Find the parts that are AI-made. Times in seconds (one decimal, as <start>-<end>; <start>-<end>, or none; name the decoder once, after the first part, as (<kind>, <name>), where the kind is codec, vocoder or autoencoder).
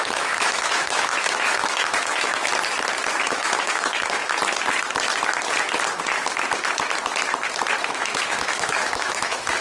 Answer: 0.0-2.5 (autoencoder, DAC-VAE); 3.2-4.2; 7.9-9.6